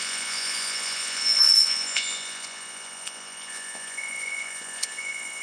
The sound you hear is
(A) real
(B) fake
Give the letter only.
B